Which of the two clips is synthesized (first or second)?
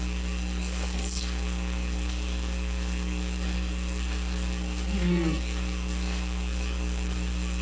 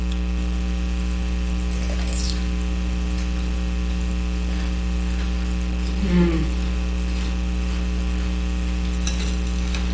first